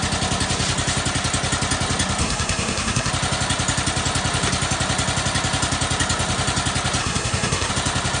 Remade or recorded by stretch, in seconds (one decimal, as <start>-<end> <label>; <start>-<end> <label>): 0.0-2.2 recorded; 2.2-3.1 remade; 3.1-7.0 recorded; 7.0-7.7 remade; 7.7-8.2 recorded